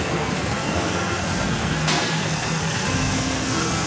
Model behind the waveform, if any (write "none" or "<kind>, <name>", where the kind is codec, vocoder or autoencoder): codec, SNAC